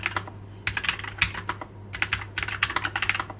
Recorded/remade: recorded